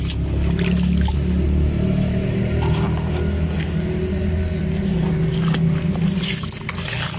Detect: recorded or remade recorded